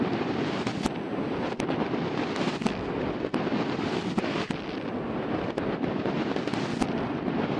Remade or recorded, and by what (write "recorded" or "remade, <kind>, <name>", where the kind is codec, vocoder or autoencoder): recorded